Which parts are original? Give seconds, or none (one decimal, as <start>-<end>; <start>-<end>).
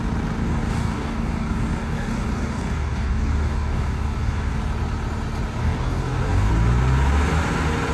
0.0-0.4; 4.6-5.6; 6.5-7.9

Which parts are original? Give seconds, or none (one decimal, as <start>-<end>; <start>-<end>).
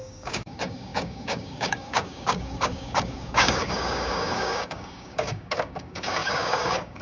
none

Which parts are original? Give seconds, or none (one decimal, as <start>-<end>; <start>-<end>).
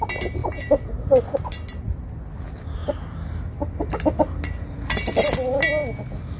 0.0-6.4